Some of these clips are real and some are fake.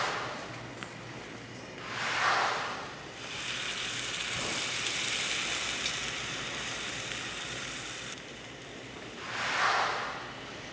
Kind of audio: real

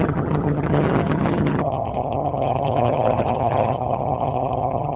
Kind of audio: fake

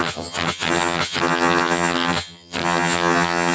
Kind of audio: fake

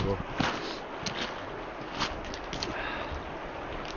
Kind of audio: real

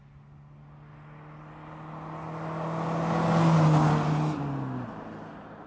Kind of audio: real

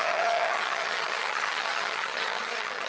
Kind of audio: fake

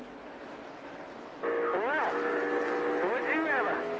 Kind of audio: real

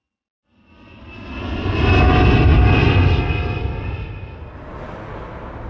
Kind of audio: real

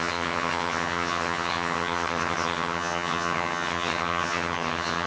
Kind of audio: fake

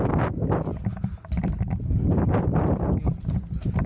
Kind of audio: real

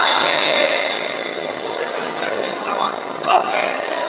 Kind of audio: fake